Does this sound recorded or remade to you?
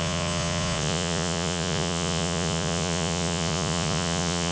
remade